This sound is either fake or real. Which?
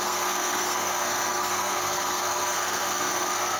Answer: fake